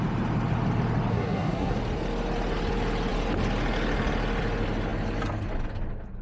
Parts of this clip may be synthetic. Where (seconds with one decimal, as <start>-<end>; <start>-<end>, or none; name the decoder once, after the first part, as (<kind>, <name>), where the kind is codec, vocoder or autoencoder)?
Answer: 1.1-1.8 (codec, SNAC)